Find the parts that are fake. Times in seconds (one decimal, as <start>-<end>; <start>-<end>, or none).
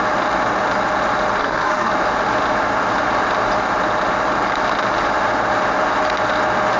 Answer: 1.4-1.9